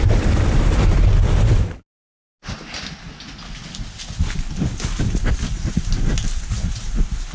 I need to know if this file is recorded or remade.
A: recorded